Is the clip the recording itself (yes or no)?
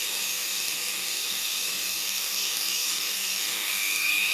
no